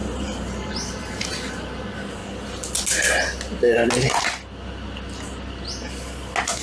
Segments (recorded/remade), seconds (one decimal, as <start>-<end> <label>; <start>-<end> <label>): 0.0-2.2 remade; 2.2-6.6 recorded